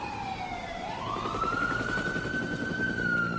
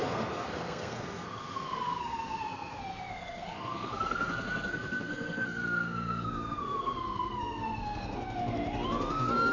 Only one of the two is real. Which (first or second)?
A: first